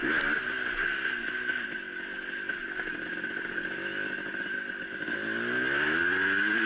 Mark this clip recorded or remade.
recorded